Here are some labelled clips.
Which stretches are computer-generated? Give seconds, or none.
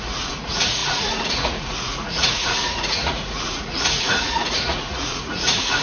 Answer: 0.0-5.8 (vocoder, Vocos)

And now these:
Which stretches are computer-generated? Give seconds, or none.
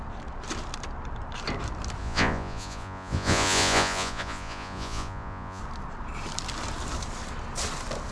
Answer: 2.0-5.6 (vocoder, Vocos)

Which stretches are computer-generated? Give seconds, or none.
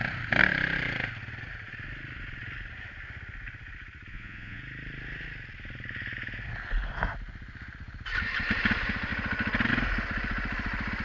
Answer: 4.1-4.6 (vocoder, Vocos)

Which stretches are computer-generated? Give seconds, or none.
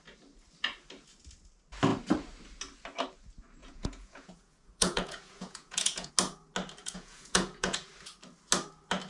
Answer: 3.6-6.1 (vocoder, Vocos); 6.8-7.9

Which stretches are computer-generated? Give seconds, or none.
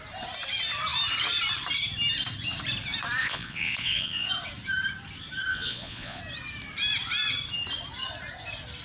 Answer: 3.2-4.3 (vocoder, Vocos); 5.5-6.2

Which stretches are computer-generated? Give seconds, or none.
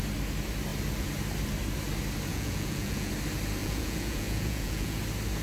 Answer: 2.3-3.1 (vocoder, Vocos); 3.6-5.0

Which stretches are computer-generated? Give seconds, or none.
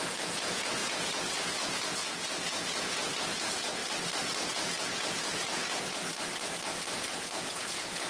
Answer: 0.0-3.8 (vocoder, Vocos); 4.5-6.1; 7.0-8.1